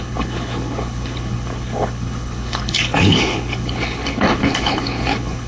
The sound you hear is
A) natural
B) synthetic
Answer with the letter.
B